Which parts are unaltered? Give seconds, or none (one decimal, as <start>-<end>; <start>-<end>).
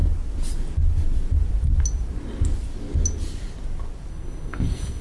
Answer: 0.0-4.1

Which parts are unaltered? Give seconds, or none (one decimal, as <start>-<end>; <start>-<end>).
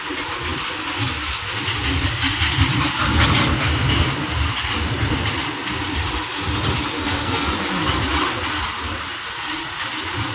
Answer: 0.0-7.0; 7.6-10.3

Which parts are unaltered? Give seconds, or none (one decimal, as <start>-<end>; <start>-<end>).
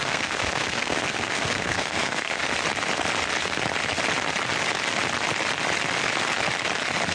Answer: 2.4-7.1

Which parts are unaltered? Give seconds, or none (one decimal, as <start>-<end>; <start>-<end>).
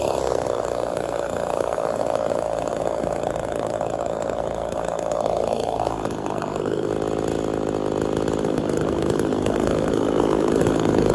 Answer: 6.9-8.4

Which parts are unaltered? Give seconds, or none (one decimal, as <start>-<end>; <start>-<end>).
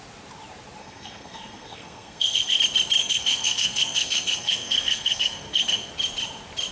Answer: 0.0-0.8; 2.6-3.0; 5.9-6.7